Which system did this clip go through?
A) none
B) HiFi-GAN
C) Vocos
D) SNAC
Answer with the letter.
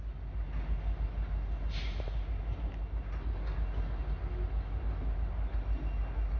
A